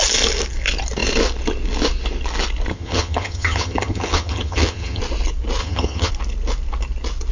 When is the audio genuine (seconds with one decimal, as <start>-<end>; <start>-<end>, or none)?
0.0-2.7; 5.0-5.6; 6.1-7.3